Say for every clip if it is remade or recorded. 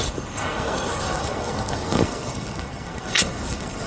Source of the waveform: remade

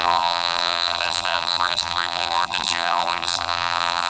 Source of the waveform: remade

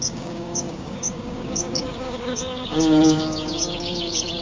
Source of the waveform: remade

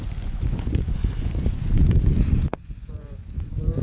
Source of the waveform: remade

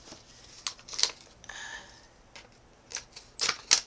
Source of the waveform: recorded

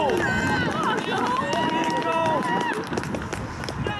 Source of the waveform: recorded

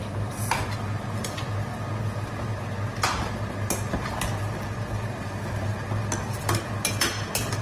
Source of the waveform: recorded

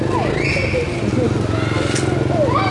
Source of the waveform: recorded